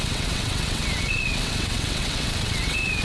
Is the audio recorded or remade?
remade